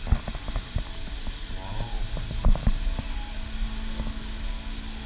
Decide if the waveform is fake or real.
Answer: real